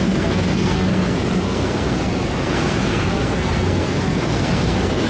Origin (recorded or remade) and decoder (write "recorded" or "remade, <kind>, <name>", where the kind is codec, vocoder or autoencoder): remade, codec, SNAC